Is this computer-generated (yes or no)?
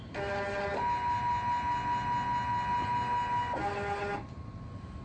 no